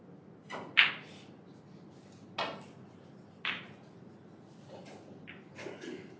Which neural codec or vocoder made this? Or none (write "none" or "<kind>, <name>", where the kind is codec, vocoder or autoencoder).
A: none